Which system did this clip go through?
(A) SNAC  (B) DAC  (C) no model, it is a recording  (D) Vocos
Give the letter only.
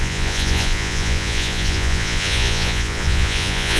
D